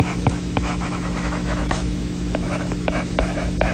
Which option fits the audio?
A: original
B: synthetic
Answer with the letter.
B